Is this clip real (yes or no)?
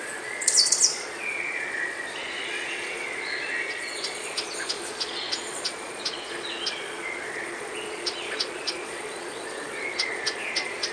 no